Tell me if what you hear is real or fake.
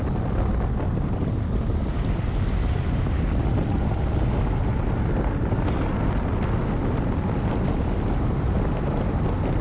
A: real